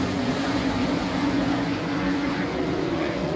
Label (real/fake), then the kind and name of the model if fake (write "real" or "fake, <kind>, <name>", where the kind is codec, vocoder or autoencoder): fake, vocoder, Vocos